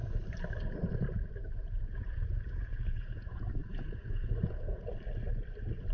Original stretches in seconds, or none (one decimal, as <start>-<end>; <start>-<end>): 0.0-1.4; 4.9-5.9